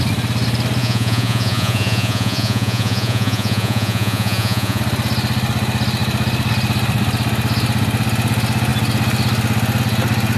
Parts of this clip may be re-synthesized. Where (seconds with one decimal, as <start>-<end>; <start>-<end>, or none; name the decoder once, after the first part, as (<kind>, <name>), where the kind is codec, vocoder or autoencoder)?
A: 0.8-4.8 (vocoder, Vocos)